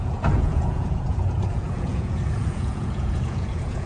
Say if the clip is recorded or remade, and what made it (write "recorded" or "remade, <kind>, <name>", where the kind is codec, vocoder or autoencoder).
remade, vocoder, Vocos